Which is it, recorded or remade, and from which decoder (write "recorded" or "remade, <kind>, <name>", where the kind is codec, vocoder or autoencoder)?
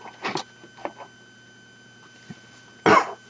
recorded